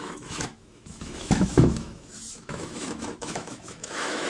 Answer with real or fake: fake